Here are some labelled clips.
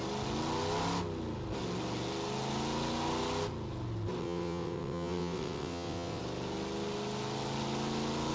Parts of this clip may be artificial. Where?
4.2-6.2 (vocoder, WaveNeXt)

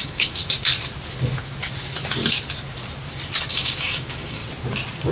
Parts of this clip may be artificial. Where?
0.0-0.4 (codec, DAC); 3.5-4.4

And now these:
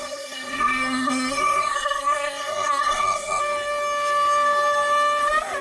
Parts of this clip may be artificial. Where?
0.0-3.4 (codec, SNAC)

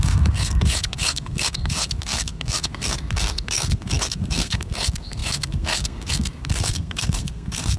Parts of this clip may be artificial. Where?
0.0-7.8 (codec, SNAC)

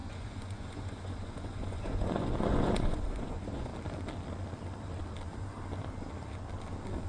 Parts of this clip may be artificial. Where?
0.0-3.7 (vocoder, Vocos)